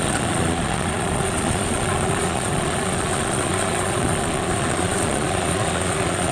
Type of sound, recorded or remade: remade